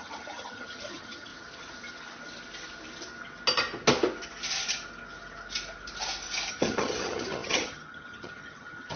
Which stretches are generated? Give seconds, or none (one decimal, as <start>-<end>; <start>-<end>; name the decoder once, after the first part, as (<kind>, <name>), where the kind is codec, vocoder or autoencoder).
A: 0.0-1.3 (vocoder, HiFi-GAN); 6.5-9.0